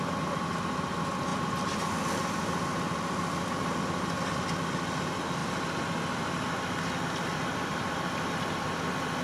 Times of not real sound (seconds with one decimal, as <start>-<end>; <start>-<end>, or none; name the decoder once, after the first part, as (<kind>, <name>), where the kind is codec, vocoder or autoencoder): 5.4-6.3 (vocoder, BigVGAN v2); 7.5-8.2